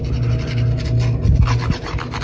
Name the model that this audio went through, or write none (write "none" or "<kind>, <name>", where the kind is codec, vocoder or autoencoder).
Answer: none